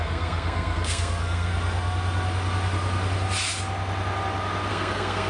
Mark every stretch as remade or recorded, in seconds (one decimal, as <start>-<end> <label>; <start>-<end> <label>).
0.0-1.5 remade; 1.5-4.7 recorded; 4.7-5.3 remade